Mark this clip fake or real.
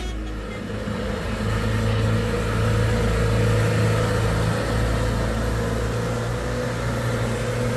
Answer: real